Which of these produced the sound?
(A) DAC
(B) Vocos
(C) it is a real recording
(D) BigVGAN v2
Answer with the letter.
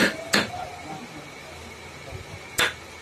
C